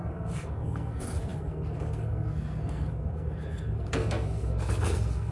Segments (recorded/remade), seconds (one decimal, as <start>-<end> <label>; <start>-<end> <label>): 0.0-5.3 remade